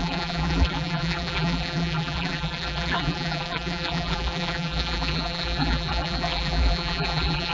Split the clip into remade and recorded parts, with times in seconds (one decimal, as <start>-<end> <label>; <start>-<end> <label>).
0.0-7.5 remade